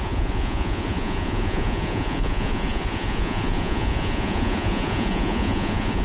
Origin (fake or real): fake